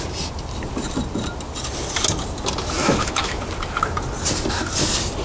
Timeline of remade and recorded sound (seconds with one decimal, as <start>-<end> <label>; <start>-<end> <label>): 0.0-2.8 recorded; 2.8-3.4 remade; 3.4-5.2 recorded

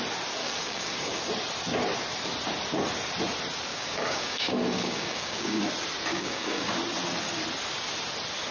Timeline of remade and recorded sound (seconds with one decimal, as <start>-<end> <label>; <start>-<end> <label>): 0.0-0.4 recorded; 0.4-1.2 remade; 1.2-3.7 recorded; 3.7-5.6 remade; 5.6-6.1 recorded; 6.1-6.7 remade; 6.7-8.5 recorded

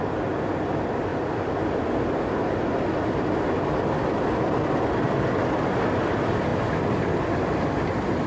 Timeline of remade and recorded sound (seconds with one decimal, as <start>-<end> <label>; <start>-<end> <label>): 0.0-8.3 recorded

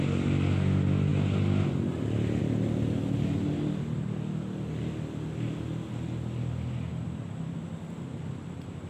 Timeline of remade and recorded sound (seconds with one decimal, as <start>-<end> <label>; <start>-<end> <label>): 0.0-8.9 recorded

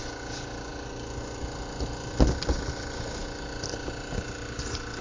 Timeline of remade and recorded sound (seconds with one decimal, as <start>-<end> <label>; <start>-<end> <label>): 0.0-5.0 recorded

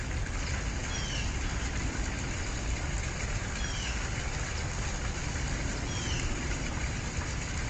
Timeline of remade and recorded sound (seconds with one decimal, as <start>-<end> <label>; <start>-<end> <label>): 0.0-7.7 recorded

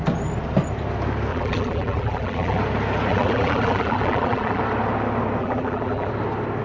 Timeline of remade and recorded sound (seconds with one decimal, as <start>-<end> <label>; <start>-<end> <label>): 0.0-1.3 recorded; 1.3-2.6 remade; 2.6-3.1 recorded; 3.1-4.6 remade; 4.6-5.4 recorded; 5.4-6.1 remade; 6.1-6.6 recorded